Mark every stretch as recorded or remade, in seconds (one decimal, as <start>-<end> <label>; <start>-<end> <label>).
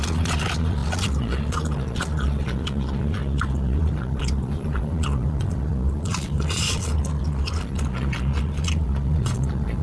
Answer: 0.0-9.8 remade